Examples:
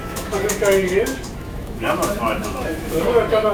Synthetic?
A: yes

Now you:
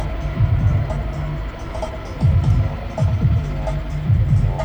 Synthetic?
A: no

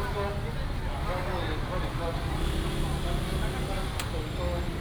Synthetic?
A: no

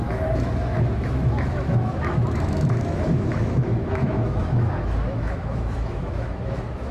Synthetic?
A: yes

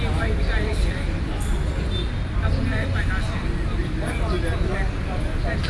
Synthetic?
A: no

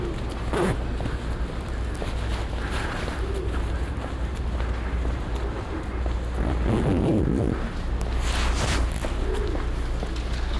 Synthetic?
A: no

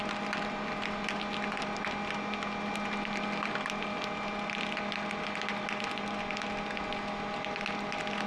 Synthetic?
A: no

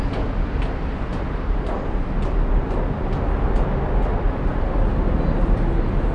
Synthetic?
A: no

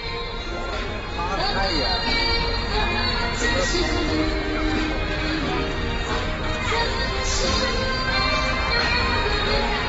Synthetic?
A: no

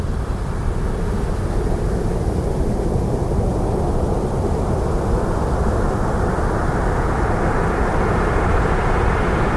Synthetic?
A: no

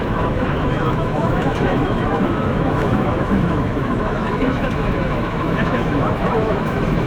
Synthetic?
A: yes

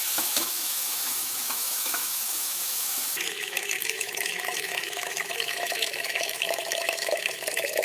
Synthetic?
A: yes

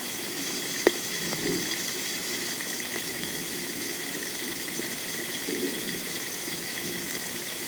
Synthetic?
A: yes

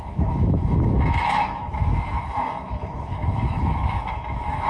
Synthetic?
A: yes